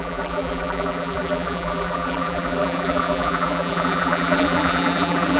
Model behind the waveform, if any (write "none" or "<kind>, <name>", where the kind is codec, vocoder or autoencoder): vocoder, BigVGAN v2